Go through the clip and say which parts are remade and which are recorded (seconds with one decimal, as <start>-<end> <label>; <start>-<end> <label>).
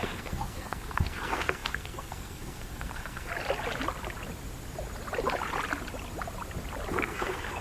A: 0.0-3.3 remade; 3.3-6.9 recorded; 6.9-7.6 remade